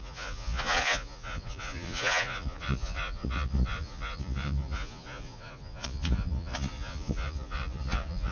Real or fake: fake